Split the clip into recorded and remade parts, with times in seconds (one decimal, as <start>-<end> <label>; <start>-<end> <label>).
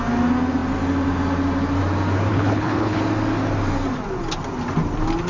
0.0-2.3 recorded; 2.3-3.0 remade; 3.0-5.3 recorded